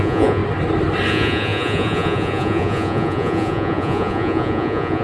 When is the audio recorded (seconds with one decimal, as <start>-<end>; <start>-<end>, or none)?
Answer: 0.4-1.1